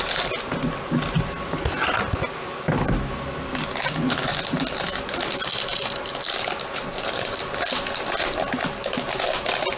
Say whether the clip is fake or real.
real